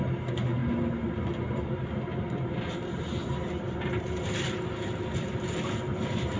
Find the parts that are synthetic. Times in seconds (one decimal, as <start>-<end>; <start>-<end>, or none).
none

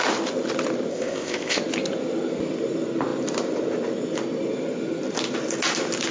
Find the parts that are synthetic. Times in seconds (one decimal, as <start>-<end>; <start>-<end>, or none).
0.9-1.6

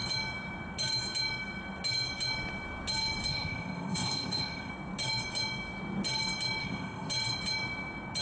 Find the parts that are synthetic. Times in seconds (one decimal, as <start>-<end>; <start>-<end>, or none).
3.3-4.7; 6.6-7.1

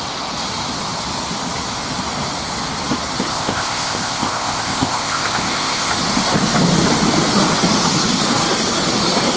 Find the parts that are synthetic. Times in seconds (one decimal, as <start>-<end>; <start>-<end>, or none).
3.3-5.9

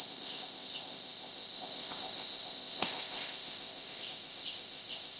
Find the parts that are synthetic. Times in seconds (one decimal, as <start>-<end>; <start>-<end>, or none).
0.0-5.2